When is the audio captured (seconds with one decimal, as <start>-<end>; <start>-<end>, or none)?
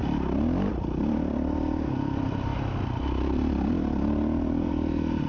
0.0-0.7; 2.5-4.7